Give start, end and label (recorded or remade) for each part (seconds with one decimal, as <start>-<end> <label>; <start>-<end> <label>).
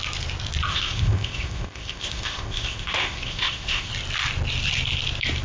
0.0-0.7 recorded; 0.7-3.9 remade; 3.9-5.4 recorded